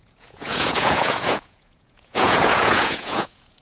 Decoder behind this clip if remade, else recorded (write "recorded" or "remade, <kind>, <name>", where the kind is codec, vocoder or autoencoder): remade, vocoder, Vocos